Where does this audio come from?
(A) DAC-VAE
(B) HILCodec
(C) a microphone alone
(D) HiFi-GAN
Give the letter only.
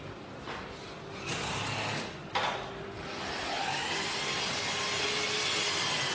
C